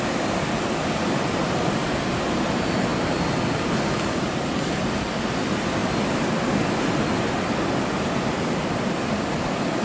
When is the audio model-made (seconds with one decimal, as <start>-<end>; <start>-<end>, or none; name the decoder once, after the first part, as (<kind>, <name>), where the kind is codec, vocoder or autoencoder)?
none